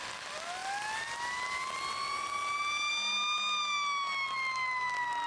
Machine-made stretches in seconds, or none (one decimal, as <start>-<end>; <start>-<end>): none